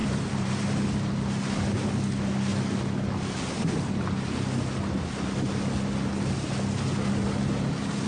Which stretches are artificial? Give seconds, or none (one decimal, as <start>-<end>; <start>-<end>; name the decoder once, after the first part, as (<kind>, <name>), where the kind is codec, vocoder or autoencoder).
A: 0.0-0.5 (vocoder, BigVGAN v2)